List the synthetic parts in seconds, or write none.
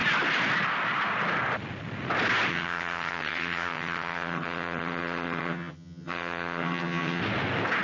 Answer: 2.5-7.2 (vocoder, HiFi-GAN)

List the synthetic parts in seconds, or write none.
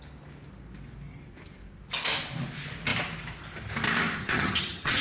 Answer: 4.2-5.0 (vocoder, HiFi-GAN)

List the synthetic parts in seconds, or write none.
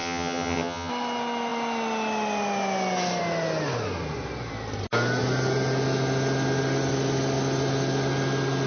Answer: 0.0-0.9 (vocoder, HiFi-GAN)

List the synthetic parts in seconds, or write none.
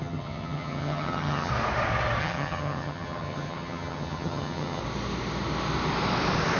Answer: 0.0-1.5 (vocoder, HiFi-GAN); 2.2-4.8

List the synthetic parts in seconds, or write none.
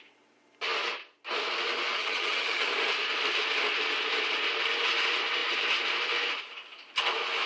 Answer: 2.0-2.7 (vocoder, HiFi-GAN)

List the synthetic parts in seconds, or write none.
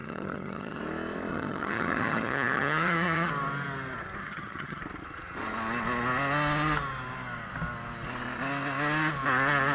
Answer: 0.0-0.8 (vocoder, HiFi-GAN); 1.3-3.3; 4.2-4.8